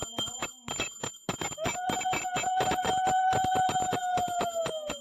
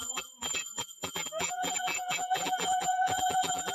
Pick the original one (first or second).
first